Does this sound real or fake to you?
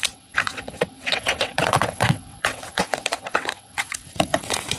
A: fake